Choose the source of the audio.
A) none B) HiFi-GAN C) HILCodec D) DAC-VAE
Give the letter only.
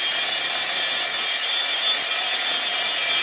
A